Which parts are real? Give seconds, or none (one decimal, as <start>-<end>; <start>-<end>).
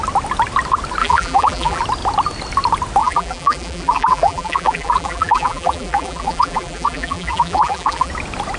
0.0-1.0; 1.8-3.0; 8.1-8.6